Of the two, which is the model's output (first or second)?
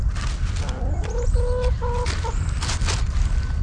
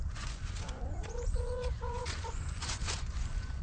second